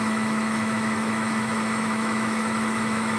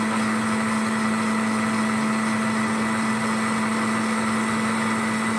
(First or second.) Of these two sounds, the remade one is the first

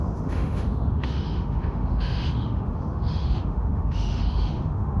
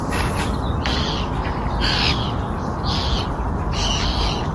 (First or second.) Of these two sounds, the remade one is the first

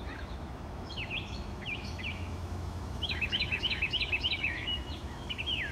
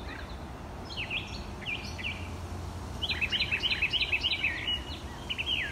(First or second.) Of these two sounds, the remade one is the first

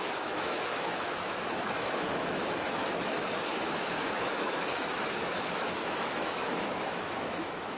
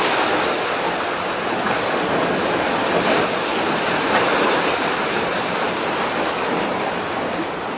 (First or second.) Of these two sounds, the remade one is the first